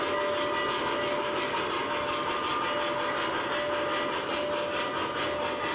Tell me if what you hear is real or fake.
real